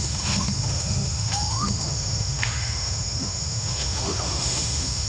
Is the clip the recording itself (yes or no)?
no